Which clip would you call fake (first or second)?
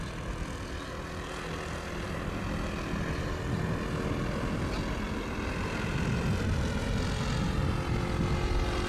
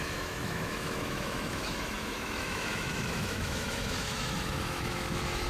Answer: second